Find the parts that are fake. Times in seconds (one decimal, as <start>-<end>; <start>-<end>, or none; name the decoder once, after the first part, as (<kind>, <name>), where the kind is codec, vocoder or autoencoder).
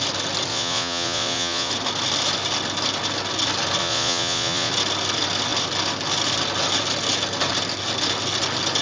0.5-1.7 (vocoder, Vocos); 3.8-4.7